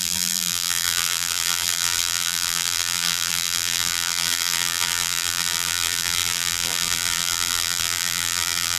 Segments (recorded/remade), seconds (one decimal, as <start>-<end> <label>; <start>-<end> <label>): 0.0-8.8 remade